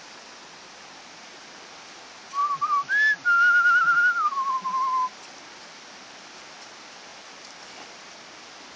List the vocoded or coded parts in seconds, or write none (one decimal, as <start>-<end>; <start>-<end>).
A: none